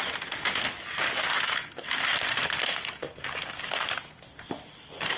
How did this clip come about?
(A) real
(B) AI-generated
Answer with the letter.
A